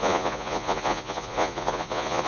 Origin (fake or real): fake